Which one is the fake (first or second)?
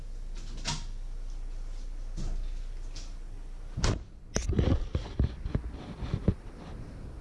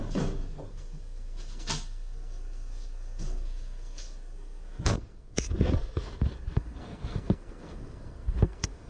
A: second